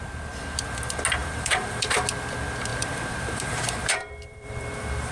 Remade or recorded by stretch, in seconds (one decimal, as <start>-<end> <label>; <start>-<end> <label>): 0.0-1.2 recorded; 1.2-2.0 remade; 2.0-2.7 recorded; 2.7-5.1 remade